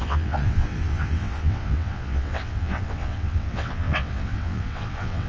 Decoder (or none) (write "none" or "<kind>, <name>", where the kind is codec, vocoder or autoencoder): vocoder, WaveNeXt